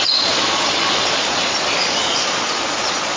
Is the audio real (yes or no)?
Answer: no